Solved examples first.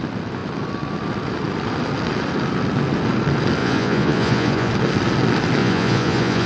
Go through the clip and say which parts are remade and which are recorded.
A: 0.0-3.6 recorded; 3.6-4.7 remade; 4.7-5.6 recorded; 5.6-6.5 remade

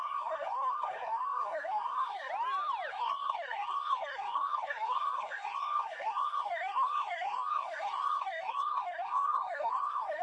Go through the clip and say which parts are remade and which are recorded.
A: 0.0-2.3 remade; 2.3-2.9 recorded; 2.9-10.2 remade